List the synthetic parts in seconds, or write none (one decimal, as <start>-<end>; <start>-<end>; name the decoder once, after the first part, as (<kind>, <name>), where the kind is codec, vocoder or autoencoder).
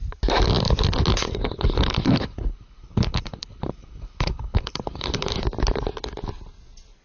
1.1-5.3 (codec, HILCodec)